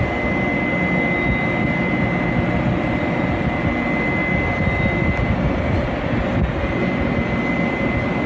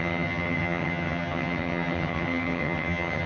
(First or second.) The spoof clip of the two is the second